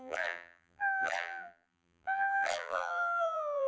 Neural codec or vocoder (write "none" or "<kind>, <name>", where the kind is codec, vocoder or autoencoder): vocoder, BigVGAN v2